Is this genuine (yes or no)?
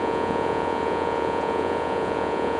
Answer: no